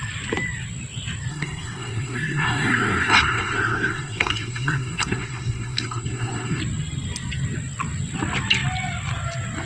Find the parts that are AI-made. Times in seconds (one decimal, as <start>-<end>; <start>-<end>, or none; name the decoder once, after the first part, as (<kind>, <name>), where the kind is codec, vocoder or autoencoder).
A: 1.3-6.6 (codec, SNAC)